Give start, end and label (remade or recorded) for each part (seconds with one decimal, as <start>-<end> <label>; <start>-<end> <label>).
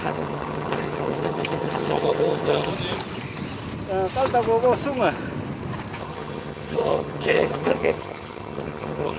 0.0-2.7 remade; 2.7-6.0 recorded; 6.0-9.2 remade